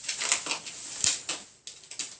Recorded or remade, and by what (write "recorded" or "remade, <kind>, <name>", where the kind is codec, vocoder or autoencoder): recorded